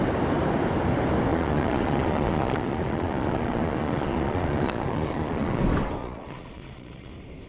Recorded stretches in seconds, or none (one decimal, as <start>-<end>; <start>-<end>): 0.0-1.3; 5.6-6.0; 7.1-7.5

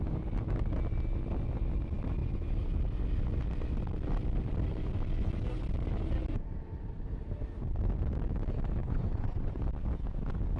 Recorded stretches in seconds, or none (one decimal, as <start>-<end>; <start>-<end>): 0.0-8.8; 9.6-10.6

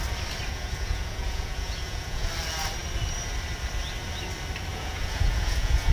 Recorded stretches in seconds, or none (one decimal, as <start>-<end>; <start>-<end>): 0.0-0.5; 2.3-4.7

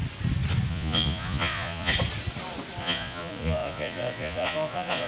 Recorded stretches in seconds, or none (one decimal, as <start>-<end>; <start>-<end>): 0.0-0.7; 1.9-2.8

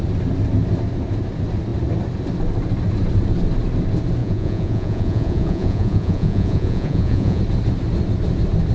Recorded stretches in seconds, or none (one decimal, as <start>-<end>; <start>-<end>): 0.0-4.2; 7.4-8.7

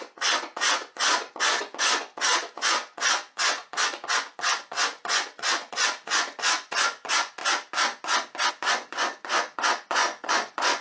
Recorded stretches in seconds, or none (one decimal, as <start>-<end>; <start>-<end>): 7.4-8.5

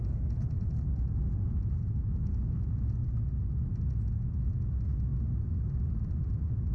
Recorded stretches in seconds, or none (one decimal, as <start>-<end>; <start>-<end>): 3.0-3.6; 5.1-6.1